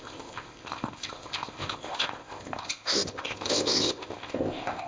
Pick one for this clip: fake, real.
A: fake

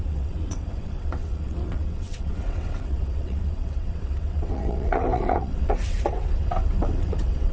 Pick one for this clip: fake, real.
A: fake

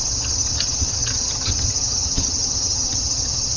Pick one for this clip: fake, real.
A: fake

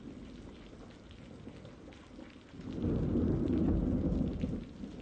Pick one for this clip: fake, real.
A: real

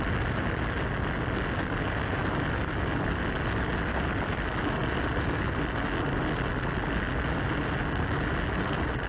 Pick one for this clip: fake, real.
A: real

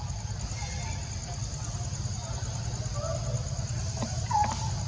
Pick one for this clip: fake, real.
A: real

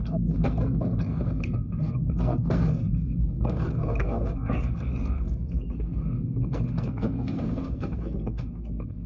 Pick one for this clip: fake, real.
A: fake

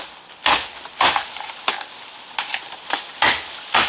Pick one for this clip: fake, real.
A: real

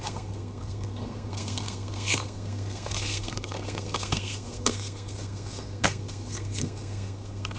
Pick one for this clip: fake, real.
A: fake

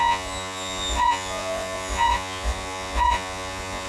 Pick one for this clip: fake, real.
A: fake